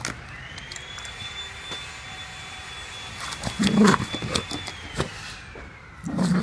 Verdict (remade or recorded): recorded